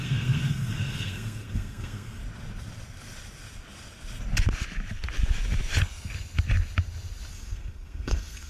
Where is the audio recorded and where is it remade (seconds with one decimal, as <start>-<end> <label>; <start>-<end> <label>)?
0.0-2.2 remade; 2.2-7.3 recorded; 7.3-8.5 remade